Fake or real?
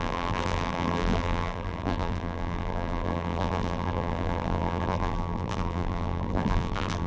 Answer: fake